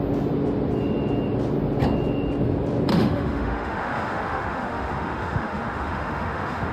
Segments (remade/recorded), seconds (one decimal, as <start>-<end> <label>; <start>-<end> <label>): 0.0-2.9 recorded; 2.9-6.7 remade